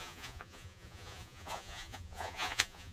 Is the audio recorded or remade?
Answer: remade